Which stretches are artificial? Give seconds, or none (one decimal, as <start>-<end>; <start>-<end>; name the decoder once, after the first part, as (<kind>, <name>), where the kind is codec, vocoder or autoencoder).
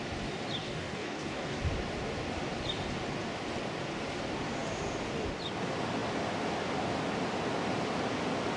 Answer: 0.6-1.6 (codec, DAC)